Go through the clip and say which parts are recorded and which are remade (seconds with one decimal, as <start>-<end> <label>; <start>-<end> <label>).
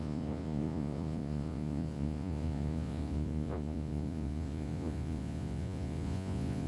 0.0-6.7 remade